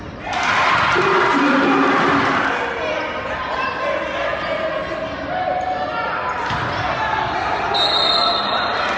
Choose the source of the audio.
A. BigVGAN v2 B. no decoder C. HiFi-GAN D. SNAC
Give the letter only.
B